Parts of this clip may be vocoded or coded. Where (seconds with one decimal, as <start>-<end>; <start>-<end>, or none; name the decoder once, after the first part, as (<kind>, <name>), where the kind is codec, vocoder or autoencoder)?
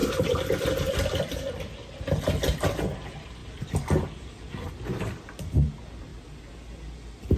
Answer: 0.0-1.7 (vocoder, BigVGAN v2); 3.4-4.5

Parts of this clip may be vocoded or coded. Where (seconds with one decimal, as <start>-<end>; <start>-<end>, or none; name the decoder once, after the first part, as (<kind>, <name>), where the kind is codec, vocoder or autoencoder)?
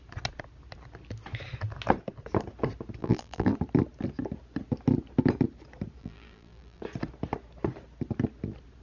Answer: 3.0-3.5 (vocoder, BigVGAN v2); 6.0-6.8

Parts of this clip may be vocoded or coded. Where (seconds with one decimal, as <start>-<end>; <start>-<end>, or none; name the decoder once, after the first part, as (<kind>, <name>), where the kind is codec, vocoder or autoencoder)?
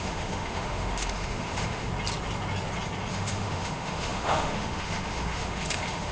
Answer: 0.0-1.9 (autoencoder, DAC-VAE); 3.1-6.1